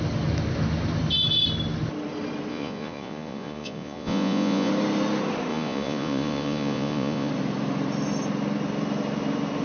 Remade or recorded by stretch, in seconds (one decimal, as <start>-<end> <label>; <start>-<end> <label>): 0.0-2.5 recorded; 2.5-4.7 remade; 4.7-5.5 recorded; 5.5-7.3 remade; 7.3-9.6 recorded